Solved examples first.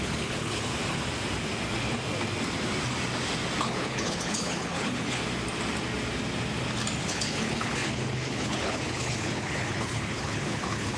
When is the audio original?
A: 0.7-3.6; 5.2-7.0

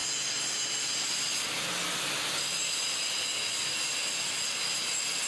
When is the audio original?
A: 0.0-5.3

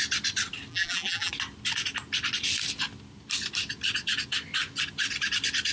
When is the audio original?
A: 0.0-0.7; 1.3-5.7

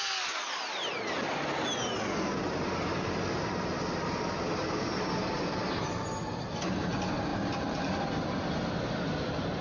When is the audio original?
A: 0.0-7.3; 8.2-9.6

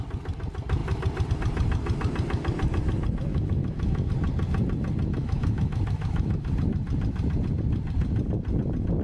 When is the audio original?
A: 0.0-3.3; 4.1-5.2; 6.5-9.0